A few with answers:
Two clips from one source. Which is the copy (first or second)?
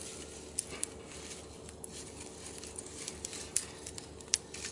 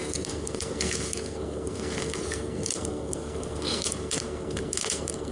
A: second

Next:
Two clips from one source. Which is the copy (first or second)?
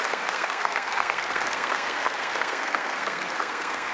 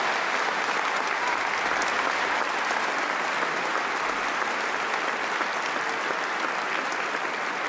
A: first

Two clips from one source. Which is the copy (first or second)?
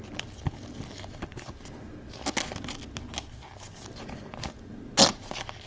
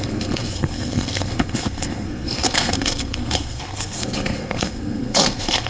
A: second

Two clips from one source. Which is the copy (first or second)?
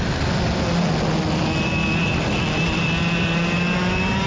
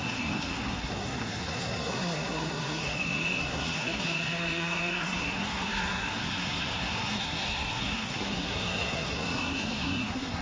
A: second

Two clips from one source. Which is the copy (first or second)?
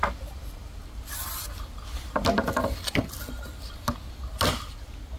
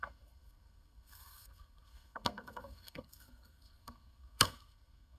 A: second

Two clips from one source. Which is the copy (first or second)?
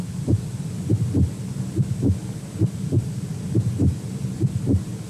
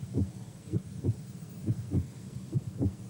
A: second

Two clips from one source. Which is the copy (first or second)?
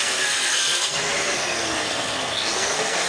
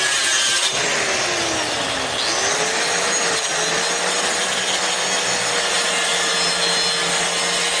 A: first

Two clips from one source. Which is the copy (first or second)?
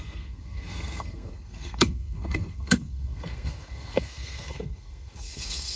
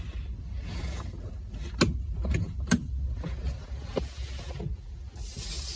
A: first